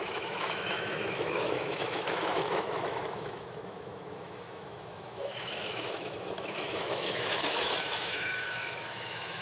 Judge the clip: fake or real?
fake